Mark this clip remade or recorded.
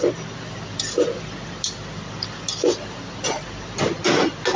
recorded